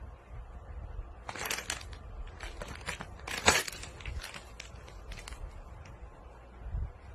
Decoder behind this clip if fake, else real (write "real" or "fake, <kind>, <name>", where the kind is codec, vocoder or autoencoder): real